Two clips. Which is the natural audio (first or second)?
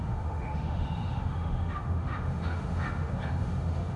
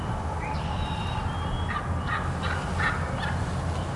second